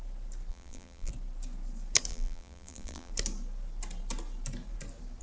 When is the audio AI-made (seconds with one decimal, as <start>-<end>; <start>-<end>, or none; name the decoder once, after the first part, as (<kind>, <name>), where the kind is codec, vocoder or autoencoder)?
0.5-1.1 (vocoder, BigVGAN v2); 2.1-3.1